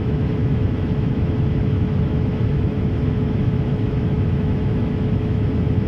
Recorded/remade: remade